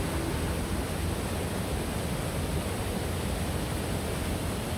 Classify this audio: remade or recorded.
recorded